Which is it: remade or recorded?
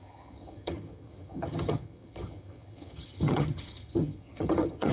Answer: remade